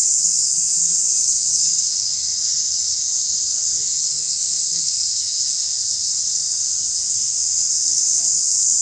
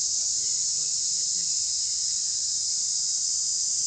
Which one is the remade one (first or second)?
first